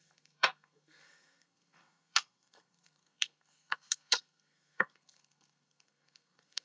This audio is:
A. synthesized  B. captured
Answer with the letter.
A